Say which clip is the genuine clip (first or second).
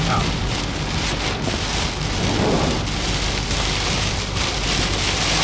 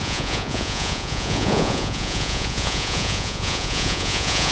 first